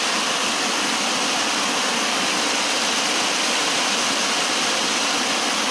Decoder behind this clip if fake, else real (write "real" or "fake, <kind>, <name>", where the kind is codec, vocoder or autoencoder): real